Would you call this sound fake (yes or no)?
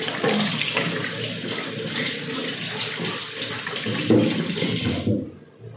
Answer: no